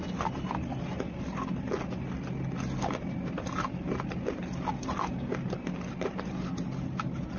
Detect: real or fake real